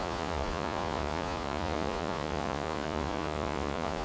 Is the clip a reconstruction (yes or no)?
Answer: yes